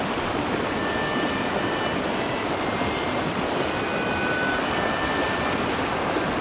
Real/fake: real